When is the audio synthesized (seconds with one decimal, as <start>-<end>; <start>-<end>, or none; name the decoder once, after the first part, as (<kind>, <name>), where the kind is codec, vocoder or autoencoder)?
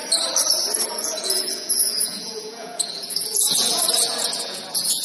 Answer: 0.9-5.0 (vocoder, Vocos)